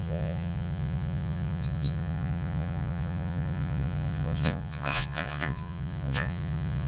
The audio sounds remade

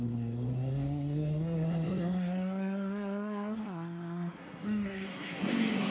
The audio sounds remade